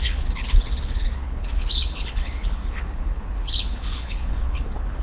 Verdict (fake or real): fake